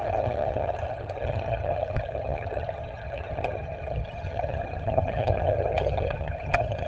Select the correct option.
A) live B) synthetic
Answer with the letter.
B